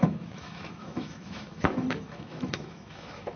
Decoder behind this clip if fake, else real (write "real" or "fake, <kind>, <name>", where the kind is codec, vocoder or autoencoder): fake, autoencoder, DAC-VAE